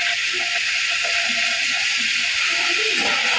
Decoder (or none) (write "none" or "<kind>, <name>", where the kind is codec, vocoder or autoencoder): none